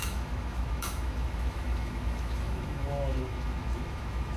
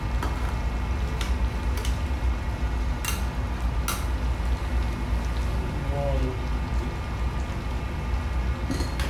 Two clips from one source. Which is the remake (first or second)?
first